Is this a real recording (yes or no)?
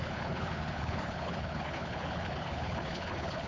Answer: no